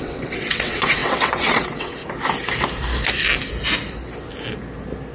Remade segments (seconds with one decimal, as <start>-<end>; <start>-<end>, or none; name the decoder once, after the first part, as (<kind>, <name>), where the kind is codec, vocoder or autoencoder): 0.0-2.0 (vocoder, WaveNeXt)